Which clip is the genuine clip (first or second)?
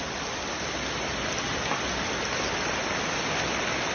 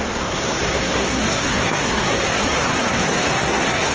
first